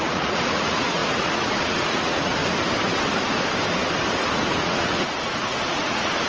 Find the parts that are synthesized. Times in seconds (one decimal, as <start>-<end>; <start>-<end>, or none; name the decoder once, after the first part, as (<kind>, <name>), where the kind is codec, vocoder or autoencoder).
0.0-2.4 (vocoder, Vocos); 4.3-6.3